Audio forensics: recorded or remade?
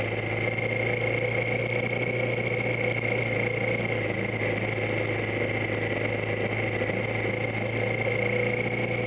recorded